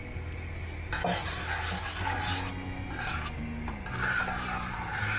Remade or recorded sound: recorded